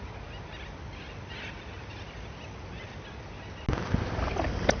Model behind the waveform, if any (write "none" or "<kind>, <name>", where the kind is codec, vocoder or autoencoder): none